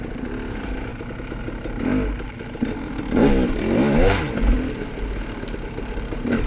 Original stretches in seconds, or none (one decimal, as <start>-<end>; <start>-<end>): 0.0-6.5